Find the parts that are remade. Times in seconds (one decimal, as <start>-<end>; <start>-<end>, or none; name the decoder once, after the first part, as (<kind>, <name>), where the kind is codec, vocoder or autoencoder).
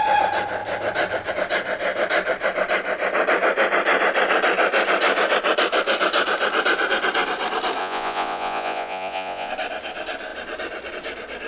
7.8-9.5 (vocoder, Vocos)